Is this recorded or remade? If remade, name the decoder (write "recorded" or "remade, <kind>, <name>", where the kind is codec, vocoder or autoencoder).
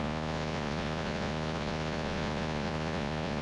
remade, vocoder, Vocos